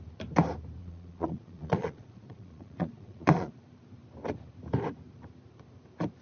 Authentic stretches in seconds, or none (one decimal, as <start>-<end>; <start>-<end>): 0.0-0.8; 3.6-6.2